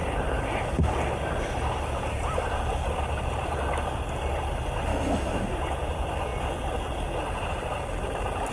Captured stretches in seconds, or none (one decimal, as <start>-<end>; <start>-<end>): 0.0-4.9; 5.4-8.5